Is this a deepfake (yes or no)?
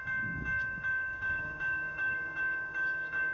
yes